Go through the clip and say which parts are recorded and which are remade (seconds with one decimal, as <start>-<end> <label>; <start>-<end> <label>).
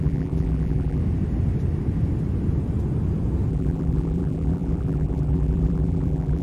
0.0-1.0 remade; 1.0-3.5 recorded; 3.5-6.4 remade